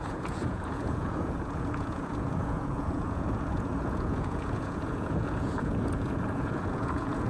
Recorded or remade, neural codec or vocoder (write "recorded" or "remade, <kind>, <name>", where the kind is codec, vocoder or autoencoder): remade, vocoder, Vocos